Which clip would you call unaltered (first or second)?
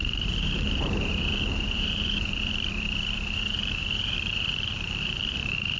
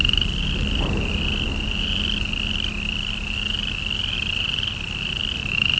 second